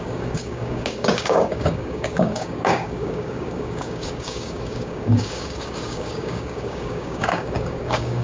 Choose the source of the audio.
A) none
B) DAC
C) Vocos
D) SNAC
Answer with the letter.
B